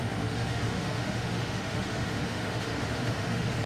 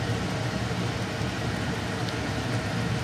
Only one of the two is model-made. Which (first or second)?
first